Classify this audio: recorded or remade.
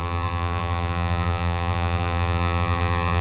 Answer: remade